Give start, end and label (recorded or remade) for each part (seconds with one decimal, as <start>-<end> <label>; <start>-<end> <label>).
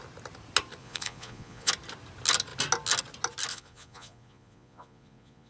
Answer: 0.0-0.8 recorded; 0.8-1.7 remade; 1.7-3.5 recorded; 3.5-5.5 remade